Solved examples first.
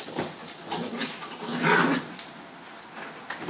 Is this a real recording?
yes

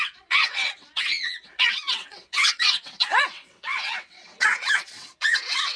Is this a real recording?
no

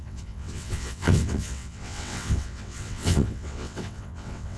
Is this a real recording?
no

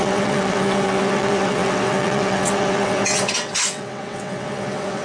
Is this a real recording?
no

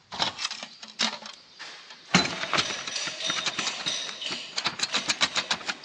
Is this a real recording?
yes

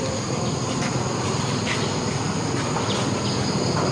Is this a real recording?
yes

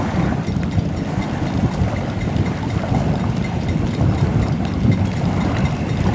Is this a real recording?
yes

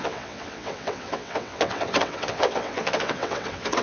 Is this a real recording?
no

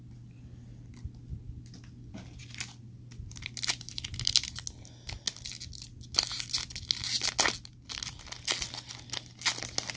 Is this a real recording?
yes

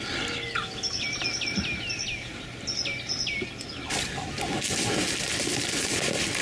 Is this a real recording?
yes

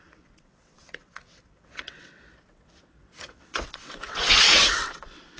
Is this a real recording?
no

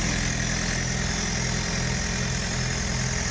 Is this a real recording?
yes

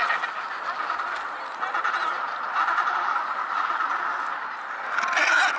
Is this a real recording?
yes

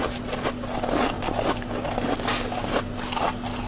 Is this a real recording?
yes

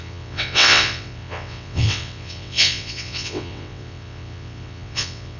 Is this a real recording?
no